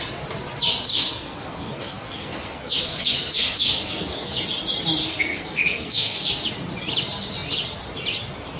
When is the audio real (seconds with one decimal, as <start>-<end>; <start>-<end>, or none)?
0.0-0.9; 4.4-5.0; 6.3-8.6